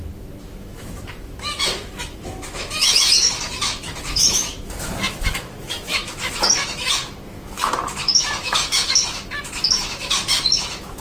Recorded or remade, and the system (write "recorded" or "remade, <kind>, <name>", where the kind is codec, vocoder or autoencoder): remade, autoencoder, DAC-VAE